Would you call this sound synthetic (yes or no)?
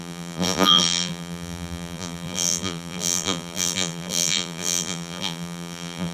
yes